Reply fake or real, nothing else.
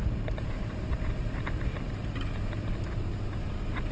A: real